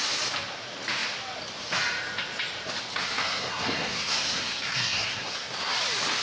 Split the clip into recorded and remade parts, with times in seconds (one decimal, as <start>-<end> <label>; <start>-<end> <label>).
0.0-2.9 recorded; 2.9-5.7 remade; 5.7-6.2 recorded